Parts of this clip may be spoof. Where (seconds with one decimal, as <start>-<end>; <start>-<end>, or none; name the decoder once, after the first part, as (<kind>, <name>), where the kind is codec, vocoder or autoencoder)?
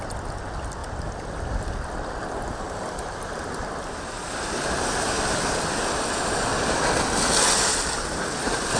none